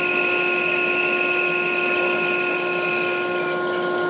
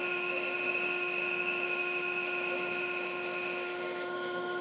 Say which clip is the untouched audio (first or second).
first